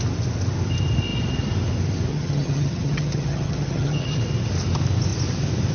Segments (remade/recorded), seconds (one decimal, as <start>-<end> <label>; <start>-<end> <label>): 0.0-2.1 recorded; 2.1-4.2 remade; 4.2-5.7 recorded